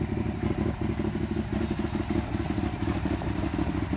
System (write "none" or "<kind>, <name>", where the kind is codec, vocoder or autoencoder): none